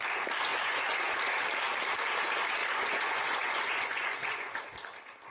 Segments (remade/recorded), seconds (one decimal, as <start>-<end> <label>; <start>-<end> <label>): 0.0-0.5 recorded; 0.5-1.2 remade; 1.2-2.6 recorded; 2.6-4.6 remade; 4.6-5.3 recorded